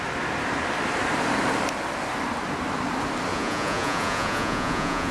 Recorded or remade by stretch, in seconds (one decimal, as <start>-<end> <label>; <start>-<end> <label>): 0.0-3.3 recorded; 3.3-5.1 remade